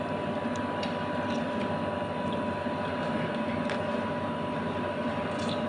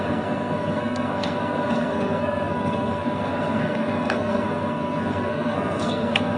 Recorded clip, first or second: first